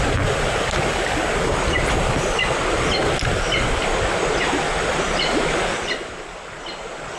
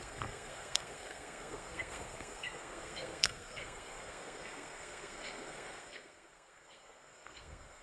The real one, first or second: first